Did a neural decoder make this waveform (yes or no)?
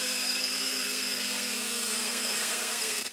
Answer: yes